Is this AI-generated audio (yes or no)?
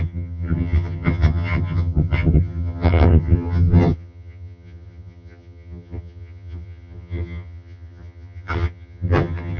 yes